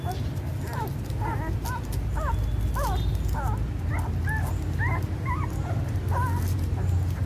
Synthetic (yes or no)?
no